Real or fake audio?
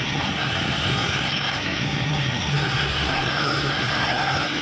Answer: fake